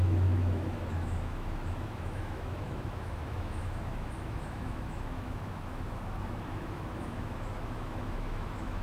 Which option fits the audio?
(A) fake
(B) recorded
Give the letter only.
A